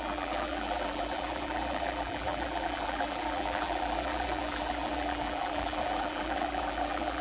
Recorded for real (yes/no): no